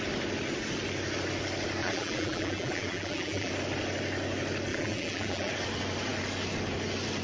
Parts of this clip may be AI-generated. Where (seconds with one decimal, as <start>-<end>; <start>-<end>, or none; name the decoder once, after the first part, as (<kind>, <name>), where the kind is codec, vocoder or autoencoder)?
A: 1.8-3.5 (vocoder, BigVGAN v2); 4.7-5.5